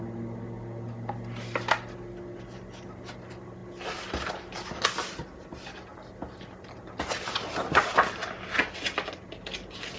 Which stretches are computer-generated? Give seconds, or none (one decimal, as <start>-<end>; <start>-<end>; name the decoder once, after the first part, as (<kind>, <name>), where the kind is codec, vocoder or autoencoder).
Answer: none